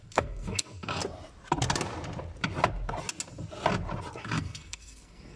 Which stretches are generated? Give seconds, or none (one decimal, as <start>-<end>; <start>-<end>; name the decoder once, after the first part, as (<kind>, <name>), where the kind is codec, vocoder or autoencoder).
0.0-1.0 (codec, SNAC); 4.2-5.4